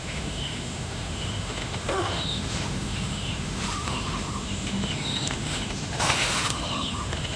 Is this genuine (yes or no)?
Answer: no